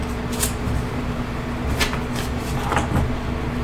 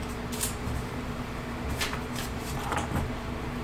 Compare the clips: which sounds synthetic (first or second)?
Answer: second